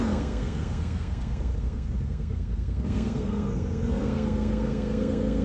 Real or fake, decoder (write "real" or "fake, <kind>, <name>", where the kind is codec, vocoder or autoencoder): fake, codec, SNAC